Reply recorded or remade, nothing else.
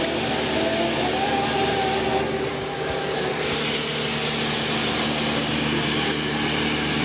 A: recorded